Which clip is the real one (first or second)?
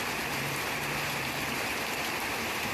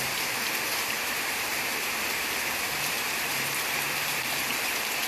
first